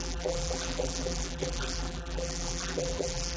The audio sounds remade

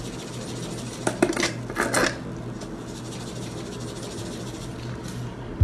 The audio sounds recorded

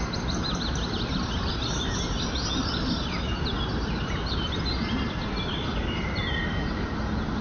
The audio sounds recorded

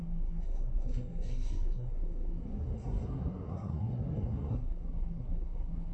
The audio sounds remade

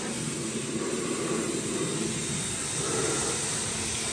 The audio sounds recorded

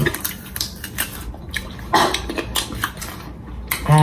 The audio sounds recorded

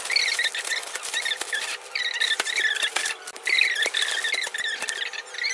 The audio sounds recorded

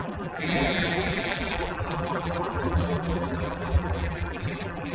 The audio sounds remade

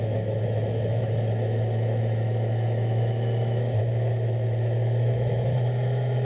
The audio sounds remade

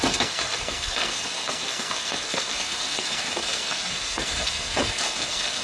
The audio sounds remade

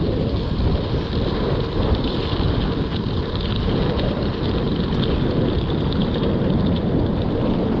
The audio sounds recorded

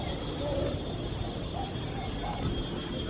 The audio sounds recorded